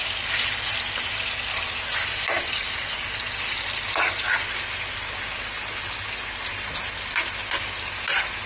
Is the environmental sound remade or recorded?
recorded